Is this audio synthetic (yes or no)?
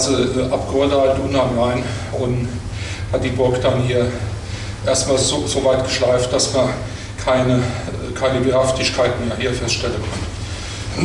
no